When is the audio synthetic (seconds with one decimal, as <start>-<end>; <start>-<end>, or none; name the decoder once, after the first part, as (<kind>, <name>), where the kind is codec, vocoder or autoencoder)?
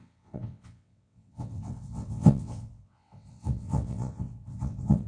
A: 0.0-5.1 (vocoder, WaveNeXt)